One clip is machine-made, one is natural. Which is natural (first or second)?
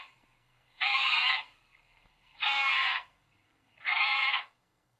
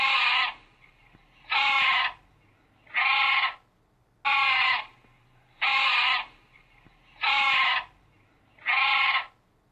second